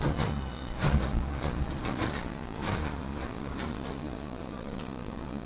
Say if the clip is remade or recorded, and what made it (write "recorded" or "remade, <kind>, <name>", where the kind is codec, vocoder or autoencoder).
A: remade, vocoder, Vocos